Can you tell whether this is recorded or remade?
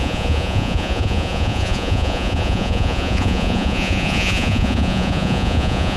remade